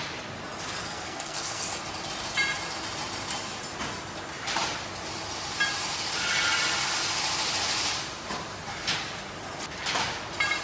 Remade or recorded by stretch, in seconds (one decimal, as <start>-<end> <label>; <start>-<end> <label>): 0.0-0.8 recorded; 0.8-1.8 remade; 1.8-10.6 recorded